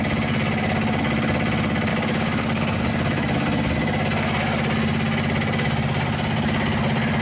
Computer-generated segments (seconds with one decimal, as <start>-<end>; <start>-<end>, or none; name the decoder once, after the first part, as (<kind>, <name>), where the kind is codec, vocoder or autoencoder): 1.9-2.9 (codec, DAC)